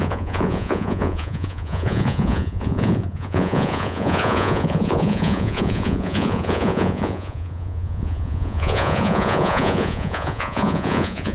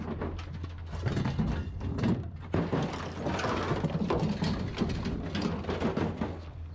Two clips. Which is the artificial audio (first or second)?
first